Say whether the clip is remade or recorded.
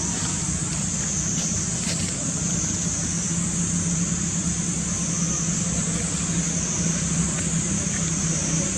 recorded